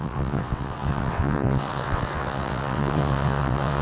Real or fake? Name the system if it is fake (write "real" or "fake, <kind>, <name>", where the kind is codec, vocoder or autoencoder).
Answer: fake, vocoder, WaveNeXt